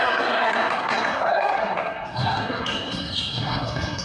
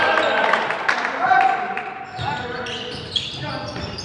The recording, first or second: second